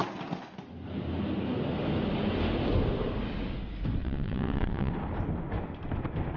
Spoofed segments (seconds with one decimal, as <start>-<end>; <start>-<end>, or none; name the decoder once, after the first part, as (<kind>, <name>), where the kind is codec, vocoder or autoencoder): 4.0-4.9 (vocoder, WaveNeXt)